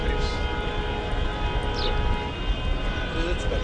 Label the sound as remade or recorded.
recorded